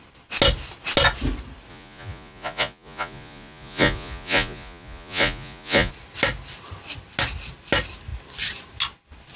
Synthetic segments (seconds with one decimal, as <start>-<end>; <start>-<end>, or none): 1.7-5.9